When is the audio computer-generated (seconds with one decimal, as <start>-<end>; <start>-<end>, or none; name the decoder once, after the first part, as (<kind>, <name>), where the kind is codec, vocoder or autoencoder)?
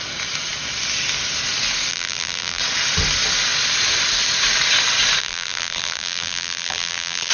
1.9-2.6 (vocoder, BigVGAN v2); 5.2-7.3